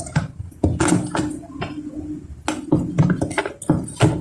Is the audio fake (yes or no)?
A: no